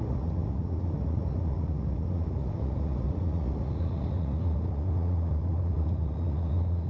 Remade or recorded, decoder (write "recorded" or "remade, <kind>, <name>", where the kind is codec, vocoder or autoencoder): remade, vocoder, Vocos